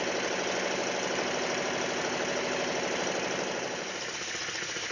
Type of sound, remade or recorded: recorded